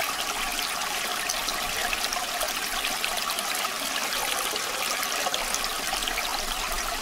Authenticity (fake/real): real